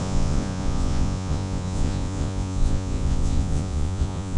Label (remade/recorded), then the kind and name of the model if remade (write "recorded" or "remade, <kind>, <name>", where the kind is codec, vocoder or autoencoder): remade, vocoder, Vocos